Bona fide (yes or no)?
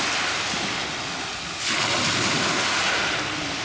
yes